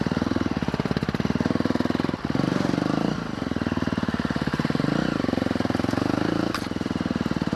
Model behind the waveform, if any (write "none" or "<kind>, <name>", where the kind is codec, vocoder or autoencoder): vocoder, BigVGAN v2